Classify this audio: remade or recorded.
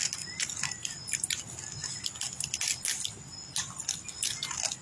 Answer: recorded